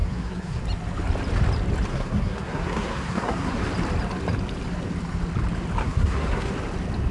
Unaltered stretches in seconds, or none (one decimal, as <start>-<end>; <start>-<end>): 0.6-1.9; 3.6-5.8; 6.5-7.1